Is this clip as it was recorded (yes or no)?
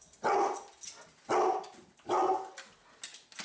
yes